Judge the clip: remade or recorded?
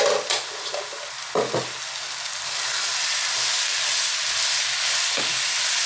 recorded